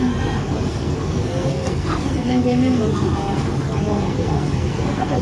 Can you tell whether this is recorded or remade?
remade